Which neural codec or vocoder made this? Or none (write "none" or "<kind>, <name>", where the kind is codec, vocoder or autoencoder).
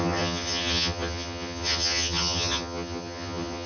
vocoder, HiFi-GAN